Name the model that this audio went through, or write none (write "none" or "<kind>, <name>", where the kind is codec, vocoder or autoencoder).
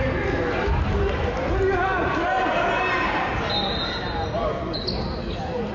none